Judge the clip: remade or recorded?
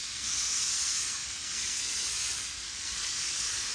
remade